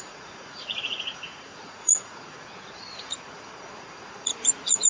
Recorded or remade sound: remade